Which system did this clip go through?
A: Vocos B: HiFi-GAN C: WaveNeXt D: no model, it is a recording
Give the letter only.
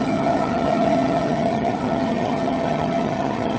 B